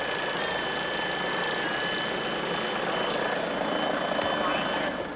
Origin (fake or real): real